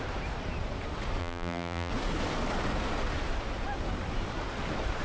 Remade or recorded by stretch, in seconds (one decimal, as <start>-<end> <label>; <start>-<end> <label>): 0.0-1.2 recorded; 1.2-1.9 remade; 1.9-5.0 recorded